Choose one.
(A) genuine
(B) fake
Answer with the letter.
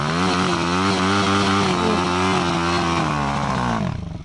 A